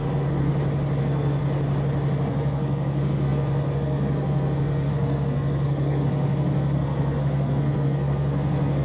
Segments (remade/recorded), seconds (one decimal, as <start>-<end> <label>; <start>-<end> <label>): 0.0-0.5 remade; 0.5-1.0 recorded; 1.0-1.4 remade; 1.4-2.3 recorded; 2.3-8.8 remade